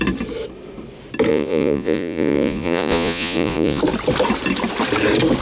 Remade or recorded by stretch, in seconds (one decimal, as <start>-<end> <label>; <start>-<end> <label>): 0.0-1.3 recorded; 1.3-3.8 remade; 3.8-5.4 recorded